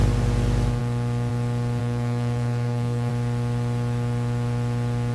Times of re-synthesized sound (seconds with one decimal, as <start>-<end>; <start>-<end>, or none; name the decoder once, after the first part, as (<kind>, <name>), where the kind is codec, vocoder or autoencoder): 1.8-3.1 (codec, SNAC)

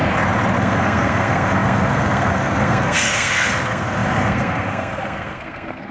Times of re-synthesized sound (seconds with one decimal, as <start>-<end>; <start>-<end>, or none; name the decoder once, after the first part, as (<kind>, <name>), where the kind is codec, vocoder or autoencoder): 0.6-5.9 (codec, SNAC)

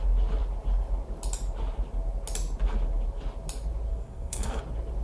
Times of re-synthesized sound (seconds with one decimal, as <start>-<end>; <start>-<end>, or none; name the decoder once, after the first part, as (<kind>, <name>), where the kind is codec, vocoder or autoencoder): 3.9-4.6 (codec, SNAC)